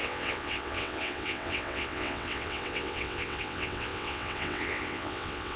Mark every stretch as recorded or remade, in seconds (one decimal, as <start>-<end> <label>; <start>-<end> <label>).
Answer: 0.0-5.6 remade